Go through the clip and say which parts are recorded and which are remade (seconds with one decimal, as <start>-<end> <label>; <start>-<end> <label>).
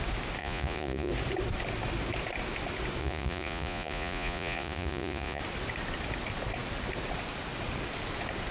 0.0-0.4 recorded; 0.4-1.1 remade; 1.1-3.0 recorded; 3.0-5.4 remade; 5.4-8.5 recorded